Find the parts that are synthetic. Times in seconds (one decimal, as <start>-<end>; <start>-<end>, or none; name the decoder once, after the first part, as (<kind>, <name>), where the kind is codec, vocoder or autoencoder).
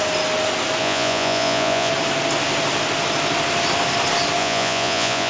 0.8-1.9 (vocoder, Vocos); 4.4-5.3